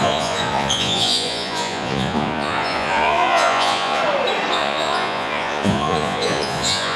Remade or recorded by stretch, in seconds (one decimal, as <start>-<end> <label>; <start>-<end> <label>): 0.0-4.0 remade; 4.0-4.5 recorded; 4.5-7.0 remade

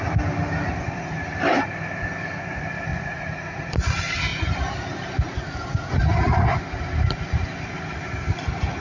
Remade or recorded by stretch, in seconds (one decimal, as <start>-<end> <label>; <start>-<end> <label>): 0.0-2.9 recorded; 2.9-3.7 remade; 3.7-8.8 recorded

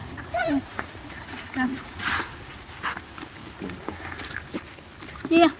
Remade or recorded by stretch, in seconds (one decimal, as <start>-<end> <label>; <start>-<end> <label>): 0.0-2.7 remade; 2.7-5.6 recorded

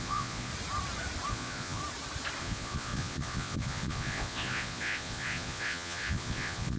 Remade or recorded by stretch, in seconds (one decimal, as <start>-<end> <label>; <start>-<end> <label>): 0.0-0.5 remade; 0.5-1.3 recorded; 1.3-1.8 remade; 1.8-2.4 recorded; 2.4-6.8 remade